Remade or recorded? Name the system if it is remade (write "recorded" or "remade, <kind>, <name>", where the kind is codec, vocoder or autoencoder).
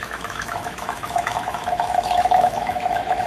remade, autoencoder, DAC-VAE